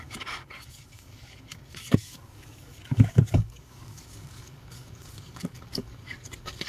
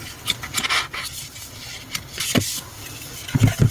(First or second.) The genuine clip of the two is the second